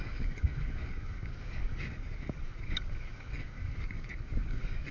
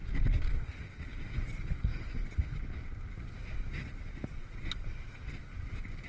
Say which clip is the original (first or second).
second